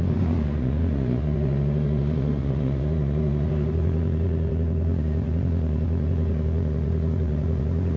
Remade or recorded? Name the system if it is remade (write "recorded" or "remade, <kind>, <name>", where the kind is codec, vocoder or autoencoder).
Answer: remade, vocoder, Vocos